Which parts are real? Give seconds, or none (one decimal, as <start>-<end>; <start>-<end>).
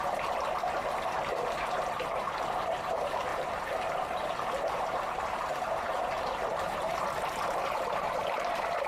0.0-3.3; 7.0-8.9